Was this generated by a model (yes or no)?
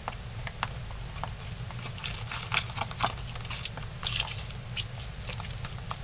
no